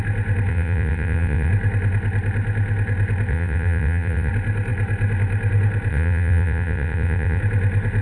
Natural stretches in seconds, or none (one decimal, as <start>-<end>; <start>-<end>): 0.0-0.5; 1.5-3.3; 4.3-5.9; 7.4-8.0